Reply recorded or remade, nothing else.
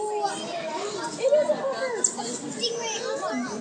recorded